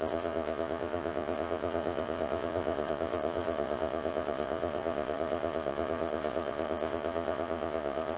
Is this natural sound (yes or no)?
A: no